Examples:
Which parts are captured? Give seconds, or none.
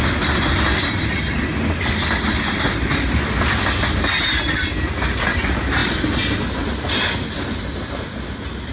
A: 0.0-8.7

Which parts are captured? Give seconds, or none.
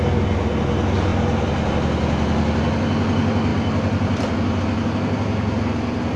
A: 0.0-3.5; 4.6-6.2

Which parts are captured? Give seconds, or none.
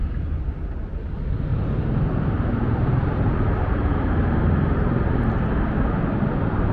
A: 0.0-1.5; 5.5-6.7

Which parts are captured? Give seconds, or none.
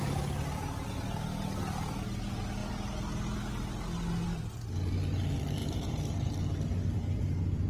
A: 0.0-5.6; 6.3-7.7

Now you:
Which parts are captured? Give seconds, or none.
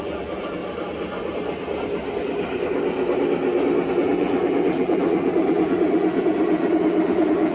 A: 0.6-3.9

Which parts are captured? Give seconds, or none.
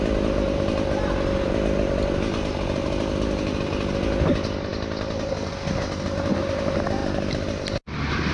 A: 0.0-7.0; 7.6-8.3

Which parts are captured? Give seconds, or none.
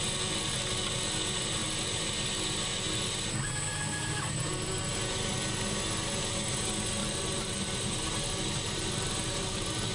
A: 0.0-3.7; 4.7-7.0